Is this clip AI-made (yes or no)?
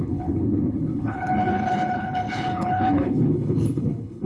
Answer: yes